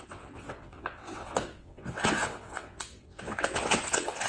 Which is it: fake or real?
fake